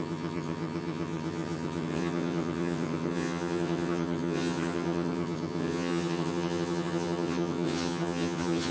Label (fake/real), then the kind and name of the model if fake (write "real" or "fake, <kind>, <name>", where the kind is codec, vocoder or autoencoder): fake, vocoder, HiFi-GAN